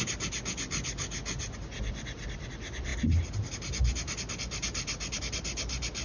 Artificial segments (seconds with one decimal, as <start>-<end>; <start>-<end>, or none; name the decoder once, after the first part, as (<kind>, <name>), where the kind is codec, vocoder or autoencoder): none